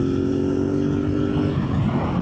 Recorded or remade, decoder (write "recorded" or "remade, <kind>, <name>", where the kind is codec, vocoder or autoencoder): recorded